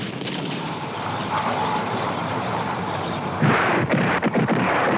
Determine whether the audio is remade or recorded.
remade